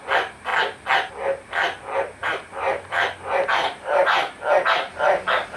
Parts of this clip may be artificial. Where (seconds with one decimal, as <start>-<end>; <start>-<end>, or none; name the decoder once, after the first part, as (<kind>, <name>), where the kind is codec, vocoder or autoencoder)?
2.2-5.6 (vocoder, BigVGAN v2)